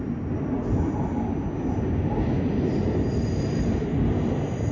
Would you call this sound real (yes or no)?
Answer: yes